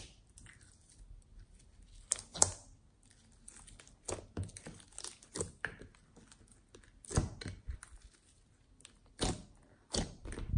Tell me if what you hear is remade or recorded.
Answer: recorded